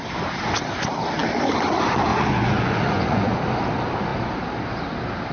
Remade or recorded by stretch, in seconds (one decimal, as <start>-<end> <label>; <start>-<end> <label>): 0.0-2.1 recorded; 2.1-3.4 remade; 3.4-5.3 recorded

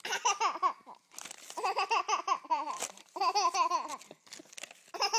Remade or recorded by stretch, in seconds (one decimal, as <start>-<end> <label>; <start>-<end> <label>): 0.0-2.5 recorded; 2.5-3.2 remade; 3.2-5.2 recorded